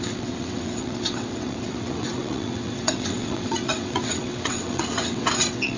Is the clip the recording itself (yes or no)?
no